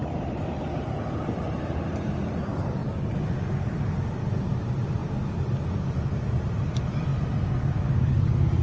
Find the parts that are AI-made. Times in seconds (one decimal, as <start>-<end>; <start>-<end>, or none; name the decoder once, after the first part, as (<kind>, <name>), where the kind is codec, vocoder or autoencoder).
0.5-2.8 (vocoder, BigVGAN v2); 4.4-5.0; 5.7-7.1; 8.1-8.6